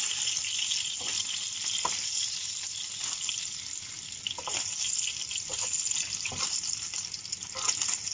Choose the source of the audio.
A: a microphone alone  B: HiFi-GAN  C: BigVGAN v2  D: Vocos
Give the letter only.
A